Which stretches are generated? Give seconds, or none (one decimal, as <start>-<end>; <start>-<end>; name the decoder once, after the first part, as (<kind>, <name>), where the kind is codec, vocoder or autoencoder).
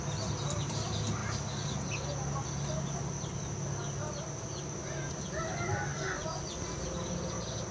none